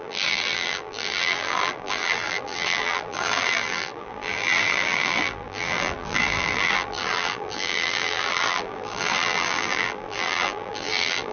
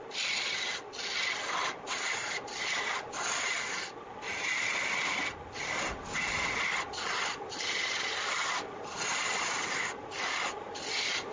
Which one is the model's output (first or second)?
first